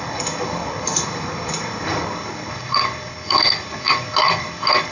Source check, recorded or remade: remade